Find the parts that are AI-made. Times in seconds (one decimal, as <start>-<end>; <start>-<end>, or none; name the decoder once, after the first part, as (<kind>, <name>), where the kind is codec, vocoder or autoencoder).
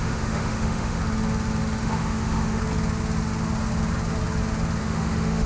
0.0-1.0 (autoencoder, DAC-VAE); 1.8-2.6; 4.8-5.5